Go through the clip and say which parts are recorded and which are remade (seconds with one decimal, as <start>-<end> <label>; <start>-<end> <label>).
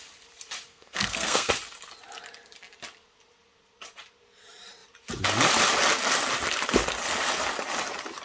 0.0-0.7 recorded; 0.7-1.5 remade; 1.5-8.2 recorded